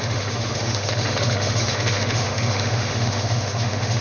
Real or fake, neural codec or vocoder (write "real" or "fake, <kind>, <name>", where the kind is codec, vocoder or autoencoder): fake, autoencoder, DAC-VAE